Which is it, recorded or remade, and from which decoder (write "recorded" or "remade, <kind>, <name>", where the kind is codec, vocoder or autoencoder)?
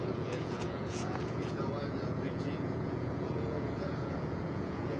remade, vocoder, Vocos